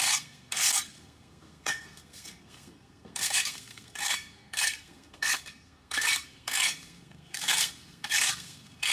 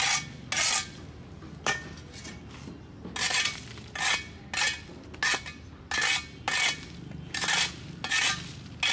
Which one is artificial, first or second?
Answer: first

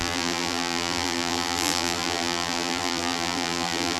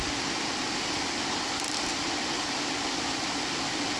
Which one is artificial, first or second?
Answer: first